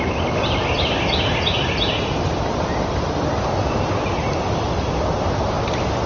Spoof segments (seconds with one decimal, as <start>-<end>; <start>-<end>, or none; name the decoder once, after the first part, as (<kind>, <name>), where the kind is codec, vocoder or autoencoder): 0.6-3.3 (vocoder, BigVGAN v2)